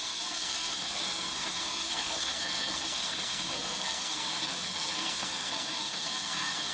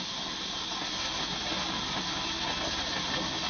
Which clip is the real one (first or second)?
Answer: second